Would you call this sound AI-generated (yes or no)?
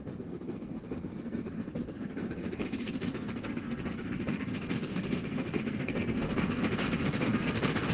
yes